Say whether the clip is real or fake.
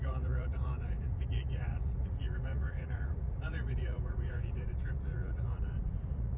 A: fake